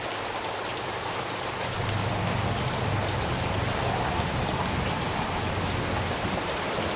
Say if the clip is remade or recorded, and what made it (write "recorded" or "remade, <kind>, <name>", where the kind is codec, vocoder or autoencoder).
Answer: recorded